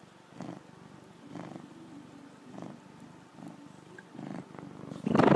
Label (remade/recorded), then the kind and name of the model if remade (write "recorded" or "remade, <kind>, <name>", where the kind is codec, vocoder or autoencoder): recorded